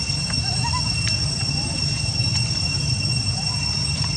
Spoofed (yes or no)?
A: no